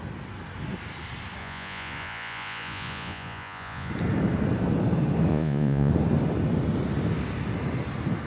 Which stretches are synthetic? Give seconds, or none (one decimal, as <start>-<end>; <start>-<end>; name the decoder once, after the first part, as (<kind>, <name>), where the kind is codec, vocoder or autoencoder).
1.4-3.9 (vocoder, Vocos); 5.3-5.9